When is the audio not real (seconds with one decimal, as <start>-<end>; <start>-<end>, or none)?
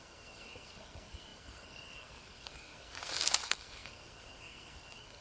0.0-5.2